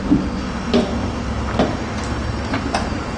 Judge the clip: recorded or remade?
recorded